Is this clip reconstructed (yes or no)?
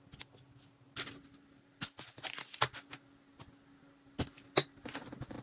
no